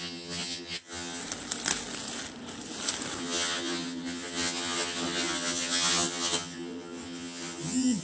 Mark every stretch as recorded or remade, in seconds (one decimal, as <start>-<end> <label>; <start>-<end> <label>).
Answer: 0.0-1.2 remade; 1.2-3.2 recorded; 3.2-8.0 remade